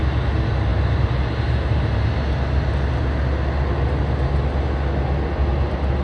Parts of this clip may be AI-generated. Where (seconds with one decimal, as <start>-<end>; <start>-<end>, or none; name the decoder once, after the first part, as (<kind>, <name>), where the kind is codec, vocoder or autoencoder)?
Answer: 0.7-2.1 (vocoder, BigVGAN v2)